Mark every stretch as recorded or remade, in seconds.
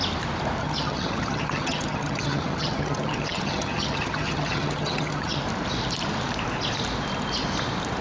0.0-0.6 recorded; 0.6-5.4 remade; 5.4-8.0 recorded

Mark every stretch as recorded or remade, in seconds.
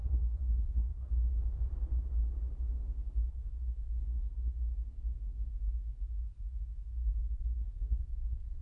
0.0-1.1 remade; 1.1-3.3 recorded; 3.3-4.5 remade; 4.5-7.2 recorded; 7.2-8.6 remade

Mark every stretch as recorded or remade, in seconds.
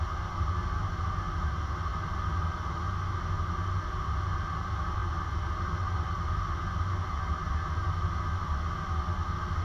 0.0-9.6 recorded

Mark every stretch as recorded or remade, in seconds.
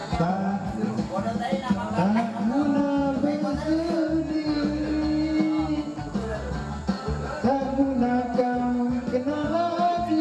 0.0-0.9 remade; 0.9-5.9 recorded; 5.9-9.5 remade; 9.5-10.2 recorded